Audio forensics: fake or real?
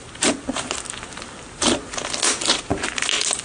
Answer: real